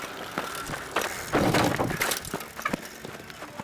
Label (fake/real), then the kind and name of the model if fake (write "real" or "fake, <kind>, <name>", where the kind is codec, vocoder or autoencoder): real